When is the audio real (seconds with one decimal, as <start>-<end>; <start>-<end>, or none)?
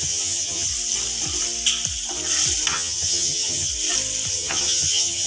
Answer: 0.7-2.7; 3.7-4.3